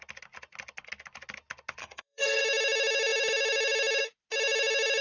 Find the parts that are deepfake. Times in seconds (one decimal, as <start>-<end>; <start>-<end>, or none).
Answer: 1.8-2.4

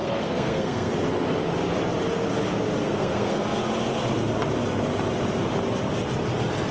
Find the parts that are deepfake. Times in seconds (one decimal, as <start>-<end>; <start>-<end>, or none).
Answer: 0.0-0.9; 2.8-3.4

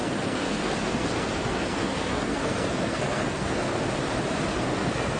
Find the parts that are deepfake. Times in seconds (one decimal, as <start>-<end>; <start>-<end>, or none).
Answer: 0.0-3.7; 4.5-5.2

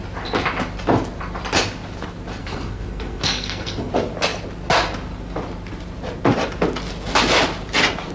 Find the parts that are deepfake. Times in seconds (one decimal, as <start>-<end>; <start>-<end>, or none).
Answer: 2.4-3.9